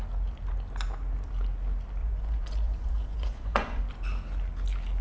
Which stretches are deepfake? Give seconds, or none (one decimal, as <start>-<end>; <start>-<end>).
2.0-3.8

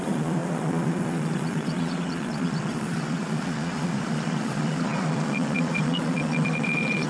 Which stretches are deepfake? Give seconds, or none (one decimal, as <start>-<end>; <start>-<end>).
0.0-7.1

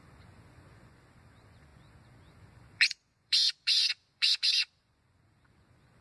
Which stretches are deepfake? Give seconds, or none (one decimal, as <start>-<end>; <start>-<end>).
0.0-6.0

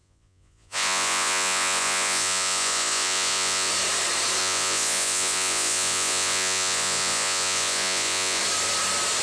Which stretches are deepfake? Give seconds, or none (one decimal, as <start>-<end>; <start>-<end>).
0.0-3.7; 4.4-8.4

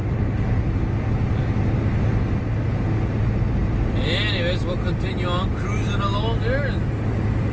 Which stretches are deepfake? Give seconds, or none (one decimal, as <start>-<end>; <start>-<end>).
none

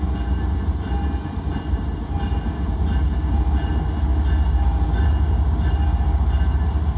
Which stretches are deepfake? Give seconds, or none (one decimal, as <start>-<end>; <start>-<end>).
none

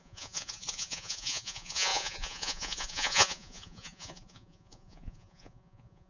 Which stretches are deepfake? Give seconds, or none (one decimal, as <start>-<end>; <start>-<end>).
0.0-6.1